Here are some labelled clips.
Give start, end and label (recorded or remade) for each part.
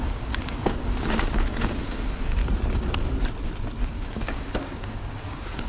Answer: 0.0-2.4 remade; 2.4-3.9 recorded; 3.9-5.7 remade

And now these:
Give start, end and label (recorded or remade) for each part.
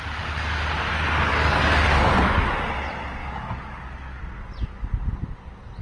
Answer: 0.0-1.3 recorded; 1.3-2.7 remade; 2.7-3.2 recorded; 3.2-4.2 remade; 4.2-5.8 recorded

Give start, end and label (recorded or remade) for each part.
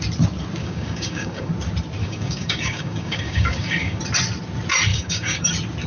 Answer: 0.0-0.6 recorded; 0.6-1.5 remade; 1.5-2.0 recorded; 2.0-4.0 remade; 4.0-4.9 recorded; 4.9-5.5 remade; 5.5-5.9 recorded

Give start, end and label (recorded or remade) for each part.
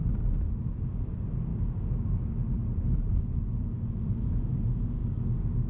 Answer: 0.0-1.5 recorded; 1.5-2.3 remade; 2.3-5.0 recorded; 5.0-5.7 remade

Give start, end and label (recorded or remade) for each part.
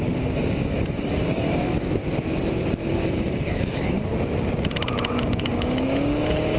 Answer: 0.0-2.0 remade; 2.0-2.9 recorded; 2.9-4.1 remade; 4.1-5.1 recorded; 5.1-6.6 remade